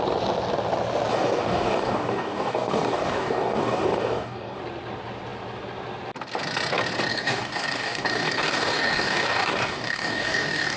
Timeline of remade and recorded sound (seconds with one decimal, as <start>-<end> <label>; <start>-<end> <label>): 0.0-1.1 recorded; 1.1-4.6 remade; 4.6-7.1 recorded; 7.1-10.8 remade